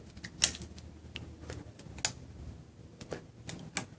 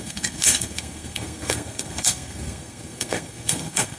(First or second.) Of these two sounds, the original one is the first